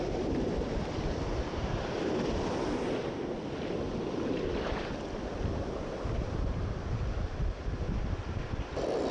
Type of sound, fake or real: fake